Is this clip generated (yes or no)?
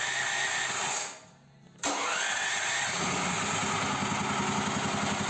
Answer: no